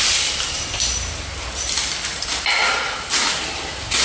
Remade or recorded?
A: recorded